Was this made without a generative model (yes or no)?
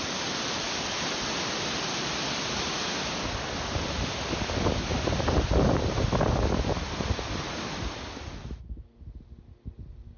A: yes